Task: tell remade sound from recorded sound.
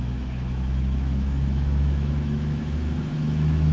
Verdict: remade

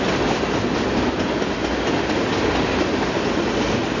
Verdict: recorded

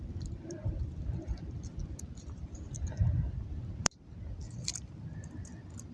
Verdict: recorded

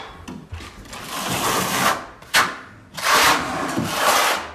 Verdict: recorded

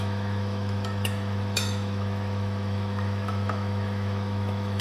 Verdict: remade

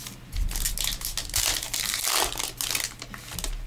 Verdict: recorded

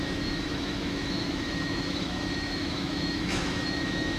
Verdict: remade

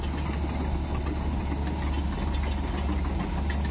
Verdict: recorded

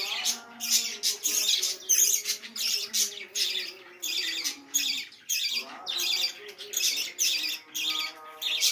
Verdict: recorded